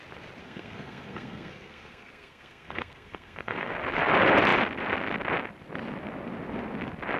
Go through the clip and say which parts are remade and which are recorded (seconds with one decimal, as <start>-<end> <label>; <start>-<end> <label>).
0.0-0.4 recorded; 0.4-3.7 remade; 3.7-7.2 recorded